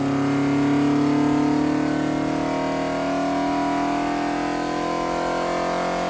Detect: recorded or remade recorded